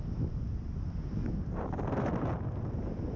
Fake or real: real